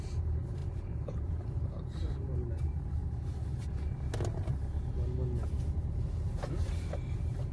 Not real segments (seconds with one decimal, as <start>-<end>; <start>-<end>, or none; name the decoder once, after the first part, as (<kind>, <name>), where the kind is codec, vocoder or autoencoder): 0.0-3.0 (vocoder, BigVGAN v2); 6.5-7.5